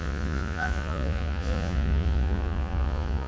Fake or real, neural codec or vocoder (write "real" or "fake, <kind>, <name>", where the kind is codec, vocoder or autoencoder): fake, vocoder, Vocos